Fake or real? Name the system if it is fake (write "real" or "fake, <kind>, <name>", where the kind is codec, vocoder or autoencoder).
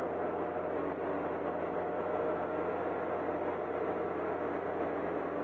real